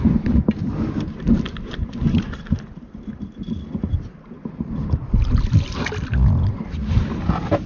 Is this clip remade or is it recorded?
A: recorded